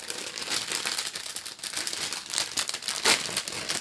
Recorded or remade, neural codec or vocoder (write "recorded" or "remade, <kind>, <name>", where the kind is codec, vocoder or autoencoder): recorded